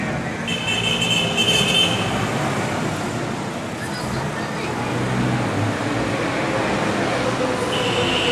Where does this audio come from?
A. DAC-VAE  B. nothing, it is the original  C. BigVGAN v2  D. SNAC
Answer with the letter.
B